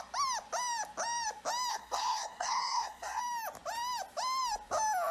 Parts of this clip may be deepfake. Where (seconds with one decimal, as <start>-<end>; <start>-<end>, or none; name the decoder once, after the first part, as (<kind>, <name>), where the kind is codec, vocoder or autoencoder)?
1.7-3.2 (codec, SNAC)